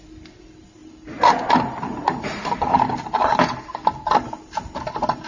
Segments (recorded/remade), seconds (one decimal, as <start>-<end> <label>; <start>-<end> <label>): 0.0-5.3 recorded